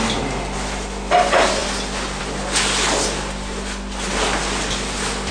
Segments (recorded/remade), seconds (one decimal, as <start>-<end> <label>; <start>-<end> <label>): 0.0-5.3 recorded